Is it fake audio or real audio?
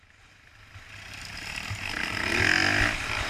real